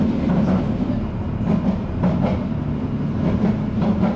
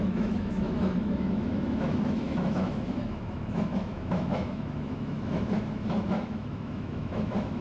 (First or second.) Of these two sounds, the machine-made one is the second